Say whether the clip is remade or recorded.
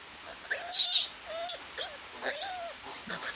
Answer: recorded